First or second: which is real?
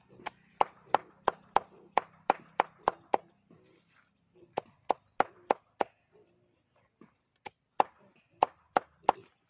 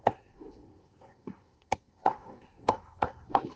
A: first